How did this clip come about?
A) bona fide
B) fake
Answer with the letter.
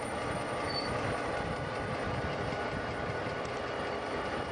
A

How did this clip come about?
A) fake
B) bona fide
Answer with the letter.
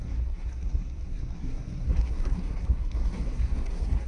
A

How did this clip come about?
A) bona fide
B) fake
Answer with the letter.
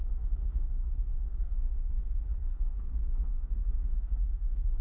B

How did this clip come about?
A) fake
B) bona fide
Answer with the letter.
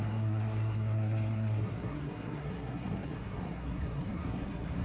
A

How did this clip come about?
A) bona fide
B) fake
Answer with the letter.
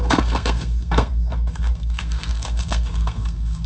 B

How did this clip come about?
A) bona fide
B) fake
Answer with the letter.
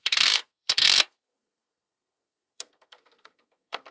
B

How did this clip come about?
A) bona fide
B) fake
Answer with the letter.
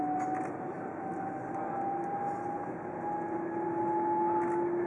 A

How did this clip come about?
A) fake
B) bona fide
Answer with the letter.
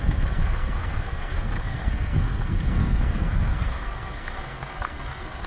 A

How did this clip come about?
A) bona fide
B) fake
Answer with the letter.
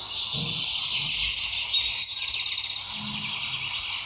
A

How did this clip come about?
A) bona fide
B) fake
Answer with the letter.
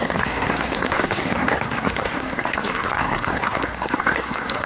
B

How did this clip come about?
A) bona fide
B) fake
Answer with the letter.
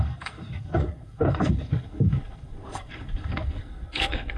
B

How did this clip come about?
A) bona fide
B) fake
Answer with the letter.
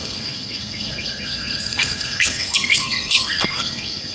B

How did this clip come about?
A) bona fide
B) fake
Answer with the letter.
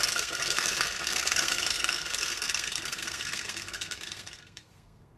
B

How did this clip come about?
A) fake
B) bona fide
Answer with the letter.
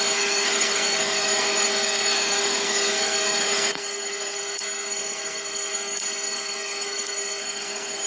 A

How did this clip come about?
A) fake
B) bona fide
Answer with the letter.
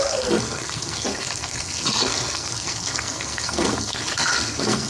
A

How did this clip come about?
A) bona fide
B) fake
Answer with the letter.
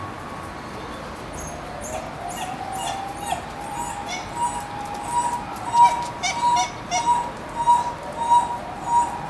A